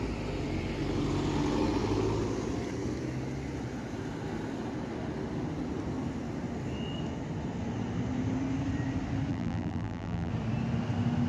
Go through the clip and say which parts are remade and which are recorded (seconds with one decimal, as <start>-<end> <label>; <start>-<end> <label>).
0.0-9.3 recorded; 9.3-10.3 remade; 10.3-11.3 recorded